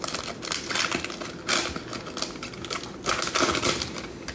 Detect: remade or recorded recorded